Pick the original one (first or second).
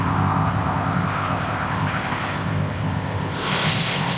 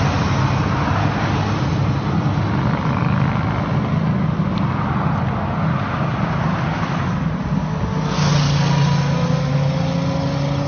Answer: second